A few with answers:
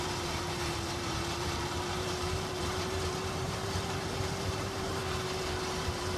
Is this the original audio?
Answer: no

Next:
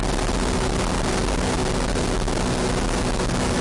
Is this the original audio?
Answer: yes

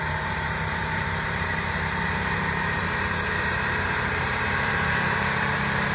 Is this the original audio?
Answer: no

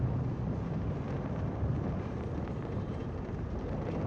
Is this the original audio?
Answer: no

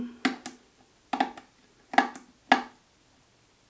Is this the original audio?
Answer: yes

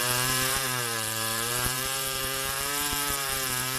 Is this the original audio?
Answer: no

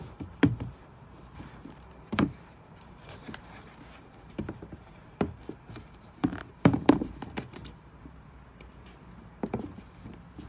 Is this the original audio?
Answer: no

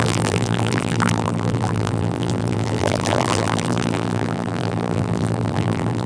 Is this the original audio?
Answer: no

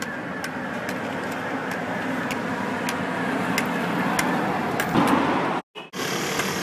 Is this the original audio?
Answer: yes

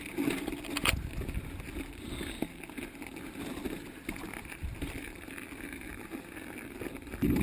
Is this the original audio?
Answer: yes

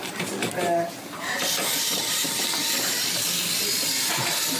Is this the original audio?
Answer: no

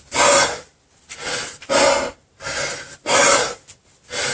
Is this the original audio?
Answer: yes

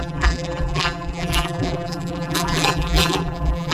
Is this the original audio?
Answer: no